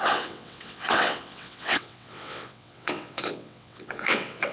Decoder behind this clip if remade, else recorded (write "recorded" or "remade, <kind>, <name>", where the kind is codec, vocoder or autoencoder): remade, vocoder, WaveNeXt